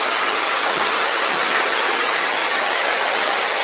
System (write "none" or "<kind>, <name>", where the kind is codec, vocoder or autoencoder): vocoder, HiFi-GAN